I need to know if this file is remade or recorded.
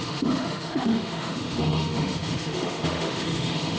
remade